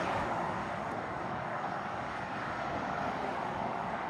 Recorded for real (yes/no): no